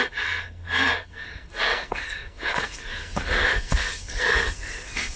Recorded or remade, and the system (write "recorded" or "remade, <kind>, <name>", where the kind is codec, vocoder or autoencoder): remade, codec, SNAC